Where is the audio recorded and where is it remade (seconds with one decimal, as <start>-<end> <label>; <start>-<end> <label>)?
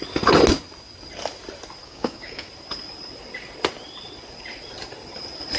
0.0-1.8 recorded; 1.8-2.5 remade; 2.5-5.6 recorded